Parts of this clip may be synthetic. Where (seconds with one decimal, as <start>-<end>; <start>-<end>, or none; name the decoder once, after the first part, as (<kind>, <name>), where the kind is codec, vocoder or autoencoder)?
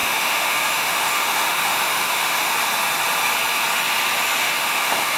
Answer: 0.0-2.5 (autoencoder, DAC-VAE); 4.4-5.2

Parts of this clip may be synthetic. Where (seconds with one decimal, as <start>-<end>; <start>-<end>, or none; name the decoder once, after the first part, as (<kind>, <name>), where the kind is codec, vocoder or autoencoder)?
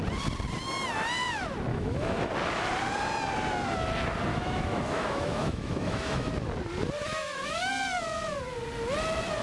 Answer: 1.7-2.3 (autoencoder, DAC-VAE); 4.3-6.3; 7.0-7.7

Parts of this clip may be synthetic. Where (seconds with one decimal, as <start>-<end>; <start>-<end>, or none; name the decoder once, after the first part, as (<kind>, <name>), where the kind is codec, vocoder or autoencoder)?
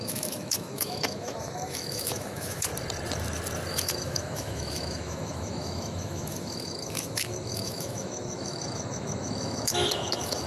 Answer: 0.0-2.7 (autoencoder, DAC-VAE); 3.7-10.5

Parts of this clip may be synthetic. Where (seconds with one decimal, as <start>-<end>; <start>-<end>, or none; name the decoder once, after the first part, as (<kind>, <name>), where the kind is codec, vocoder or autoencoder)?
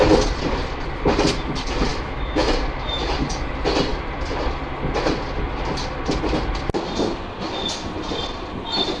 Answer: 1.9-2.5 (autoencoder, DAC-VAE)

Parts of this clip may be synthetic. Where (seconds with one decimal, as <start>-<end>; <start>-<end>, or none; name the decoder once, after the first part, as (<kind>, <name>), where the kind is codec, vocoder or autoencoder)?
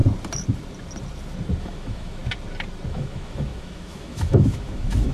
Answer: 1.6-2.2 (autoencoder, DAC-VAE); 2.9-5.1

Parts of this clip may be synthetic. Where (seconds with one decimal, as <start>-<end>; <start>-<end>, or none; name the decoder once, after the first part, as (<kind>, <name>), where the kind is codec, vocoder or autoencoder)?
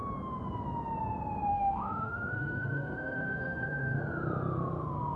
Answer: 1.5-4.0 (autoencoder, DAC-VAE)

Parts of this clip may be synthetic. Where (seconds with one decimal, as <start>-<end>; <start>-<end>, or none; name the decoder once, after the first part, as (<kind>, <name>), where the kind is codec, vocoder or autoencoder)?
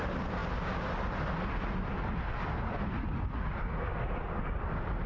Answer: none